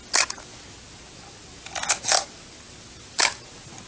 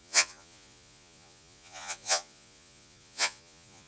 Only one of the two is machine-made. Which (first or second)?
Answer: second